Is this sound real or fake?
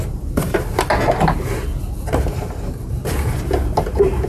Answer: real